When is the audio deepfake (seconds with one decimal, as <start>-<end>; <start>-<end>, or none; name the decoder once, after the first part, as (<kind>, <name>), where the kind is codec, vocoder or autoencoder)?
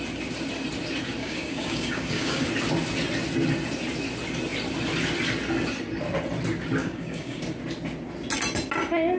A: 1.2-2.5 (codec, DAC); 6.8-7.4